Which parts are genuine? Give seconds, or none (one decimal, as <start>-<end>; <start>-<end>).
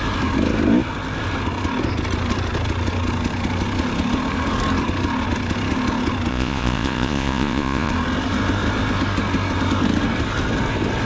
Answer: 0.0-6.3; 7.9-11.1